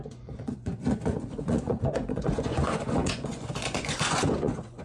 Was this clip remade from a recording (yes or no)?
yes